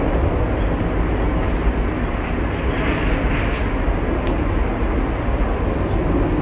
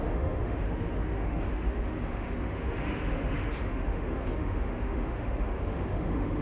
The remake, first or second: second